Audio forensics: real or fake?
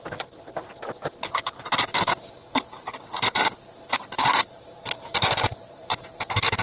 fake